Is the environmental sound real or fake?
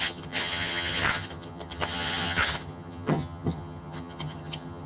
fake